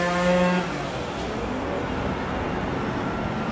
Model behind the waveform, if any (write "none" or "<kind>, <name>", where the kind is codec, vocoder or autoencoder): none